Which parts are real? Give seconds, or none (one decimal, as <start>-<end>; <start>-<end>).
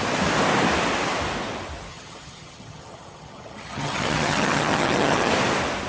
0.0-1.9; 5.3-5.9